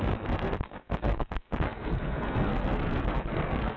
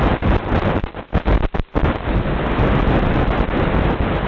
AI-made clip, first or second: first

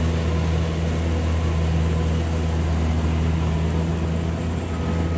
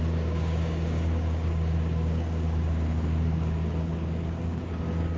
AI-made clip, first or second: second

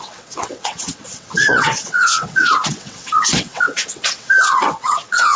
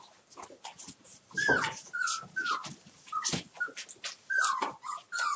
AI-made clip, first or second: first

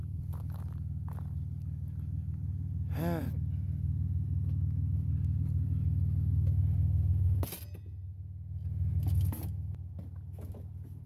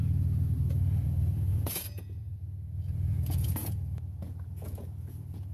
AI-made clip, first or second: second